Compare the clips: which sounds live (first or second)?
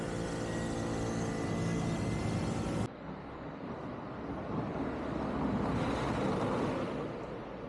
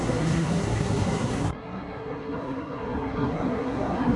first